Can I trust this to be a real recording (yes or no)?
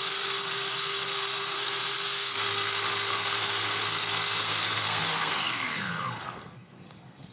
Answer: no